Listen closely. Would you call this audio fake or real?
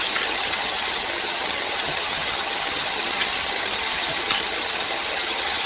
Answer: fake